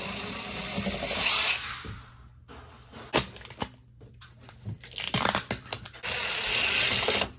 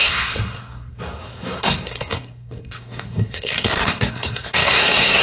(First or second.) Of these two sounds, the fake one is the second